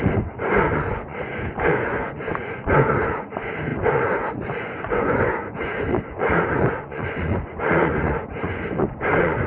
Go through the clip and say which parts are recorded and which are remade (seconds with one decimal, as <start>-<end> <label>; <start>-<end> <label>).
0.0-9.5 remade